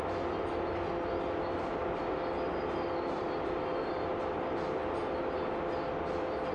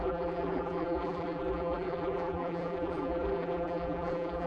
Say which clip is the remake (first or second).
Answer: second